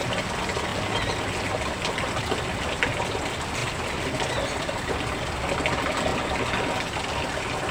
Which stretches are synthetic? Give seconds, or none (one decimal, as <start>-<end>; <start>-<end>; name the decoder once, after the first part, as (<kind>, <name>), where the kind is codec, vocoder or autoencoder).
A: 3.6-5.3 (vocoder, BigVGAN v2)